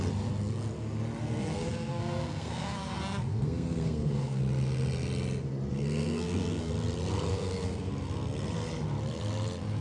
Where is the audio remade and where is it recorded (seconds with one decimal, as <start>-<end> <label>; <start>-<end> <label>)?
0.0-1.2 recorded; 1.2-4.4 remade; 4.4-5.7 recorded; 5.7-6.7 remade; 6.7-7.3 recorded; 7.3-7.9 remade; 7.9-9.8 recorded